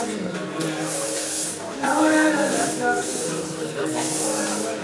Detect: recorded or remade remade